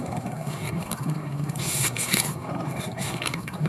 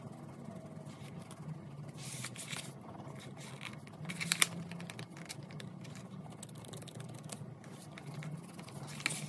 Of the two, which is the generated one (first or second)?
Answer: first